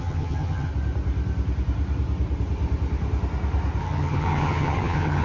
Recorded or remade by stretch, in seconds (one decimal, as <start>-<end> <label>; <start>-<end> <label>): 0.0-0.7 remade; 0.7-3.8 recorded; 3.8-5.2 remade